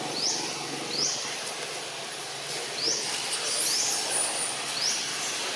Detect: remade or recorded recorded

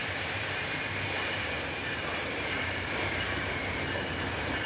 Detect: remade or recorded remade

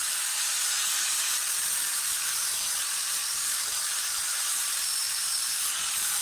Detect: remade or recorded remade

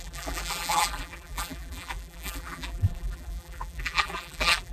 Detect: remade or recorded remade